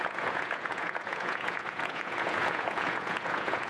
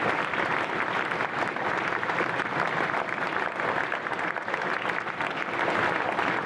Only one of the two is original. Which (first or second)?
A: second